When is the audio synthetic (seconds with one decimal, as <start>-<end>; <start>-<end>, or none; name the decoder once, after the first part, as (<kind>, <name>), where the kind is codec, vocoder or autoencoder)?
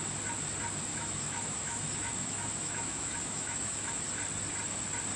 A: 0.9-4.0 (autoencoder, DAC-VAE)